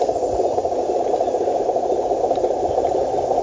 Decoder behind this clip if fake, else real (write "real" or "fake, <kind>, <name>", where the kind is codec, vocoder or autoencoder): real